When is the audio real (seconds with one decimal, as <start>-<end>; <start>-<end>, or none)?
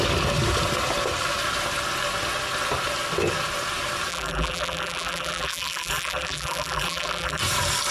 0.0-4.1; 7.4-7.9